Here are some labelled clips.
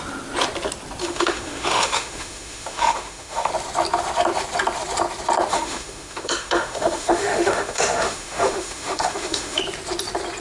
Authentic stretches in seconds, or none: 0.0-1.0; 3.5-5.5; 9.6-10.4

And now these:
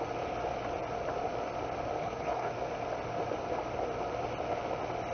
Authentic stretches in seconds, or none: 0.0-2.0; 2.5-5.1